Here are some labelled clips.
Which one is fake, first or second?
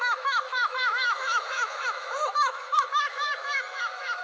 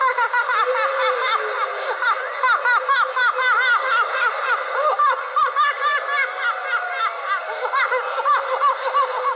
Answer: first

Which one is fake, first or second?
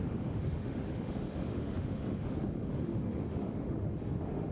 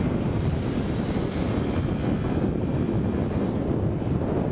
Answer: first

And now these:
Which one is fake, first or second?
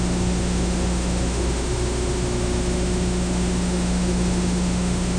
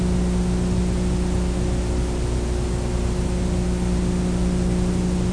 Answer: first